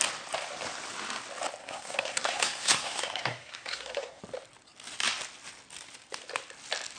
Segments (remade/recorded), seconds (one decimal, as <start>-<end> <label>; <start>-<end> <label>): 0.0-1.6 recorded; 1.6-4.2 remade; 4.2-7.0 recorded